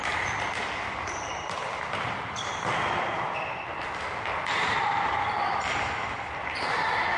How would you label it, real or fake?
real